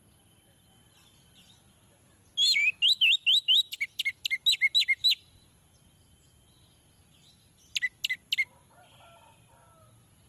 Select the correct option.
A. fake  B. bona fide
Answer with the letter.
B